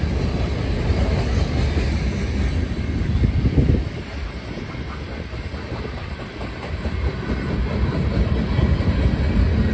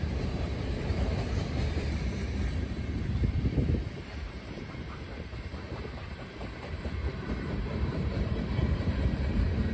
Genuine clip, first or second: first